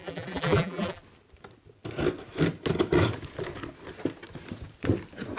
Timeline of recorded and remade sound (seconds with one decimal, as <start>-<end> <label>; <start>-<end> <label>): 0.0-1.0 remade; 1.0-5.4 recorded